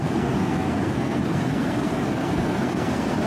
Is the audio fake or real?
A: fake